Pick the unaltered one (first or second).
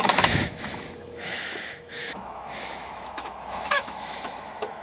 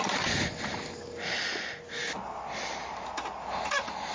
second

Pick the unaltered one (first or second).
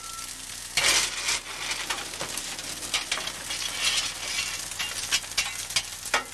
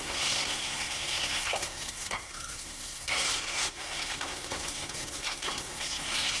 first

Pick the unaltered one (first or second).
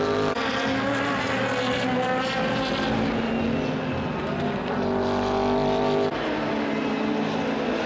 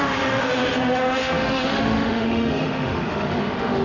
first